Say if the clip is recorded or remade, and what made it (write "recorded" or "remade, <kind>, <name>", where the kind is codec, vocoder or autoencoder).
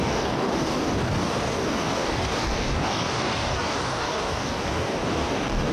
remade, codec, DAC